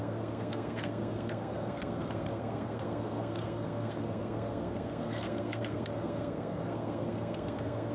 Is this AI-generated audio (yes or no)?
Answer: yes